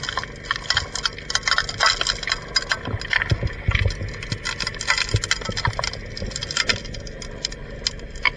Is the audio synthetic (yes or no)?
no